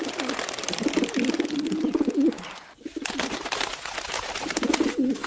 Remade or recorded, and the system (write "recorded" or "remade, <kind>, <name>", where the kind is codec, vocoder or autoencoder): recorded